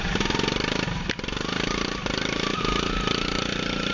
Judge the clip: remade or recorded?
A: remade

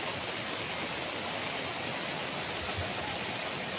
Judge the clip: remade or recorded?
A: recorded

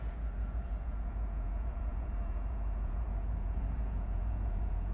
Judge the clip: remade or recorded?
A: remade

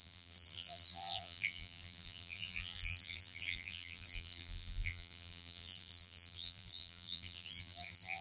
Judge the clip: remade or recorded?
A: remade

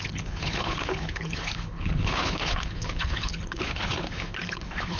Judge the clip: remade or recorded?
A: remade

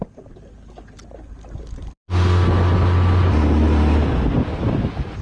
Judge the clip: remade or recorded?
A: recorded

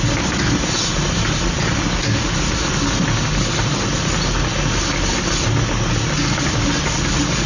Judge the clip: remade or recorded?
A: recorded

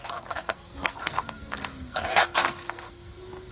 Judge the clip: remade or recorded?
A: remade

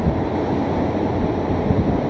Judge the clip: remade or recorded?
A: recorded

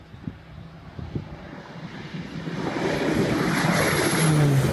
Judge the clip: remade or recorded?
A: recorded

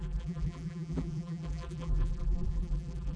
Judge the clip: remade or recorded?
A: remade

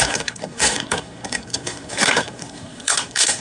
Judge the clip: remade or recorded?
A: remade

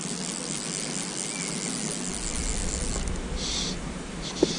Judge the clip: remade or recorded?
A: recorded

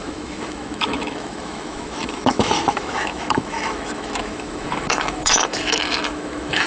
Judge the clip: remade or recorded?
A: remade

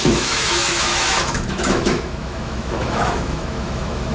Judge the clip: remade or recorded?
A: remade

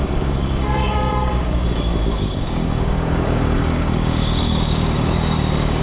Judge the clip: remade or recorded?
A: remade